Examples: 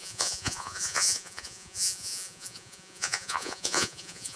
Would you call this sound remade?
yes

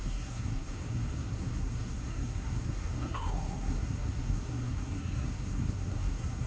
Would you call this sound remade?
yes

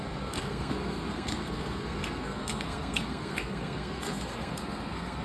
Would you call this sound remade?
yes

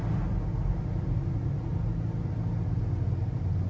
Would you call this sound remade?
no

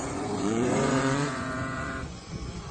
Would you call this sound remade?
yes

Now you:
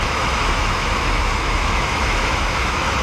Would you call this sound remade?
yes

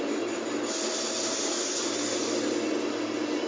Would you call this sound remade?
no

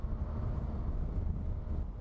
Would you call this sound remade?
no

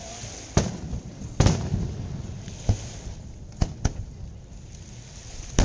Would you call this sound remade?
no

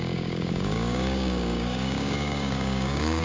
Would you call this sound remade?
yes